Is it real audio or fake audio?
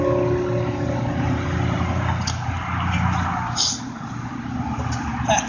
real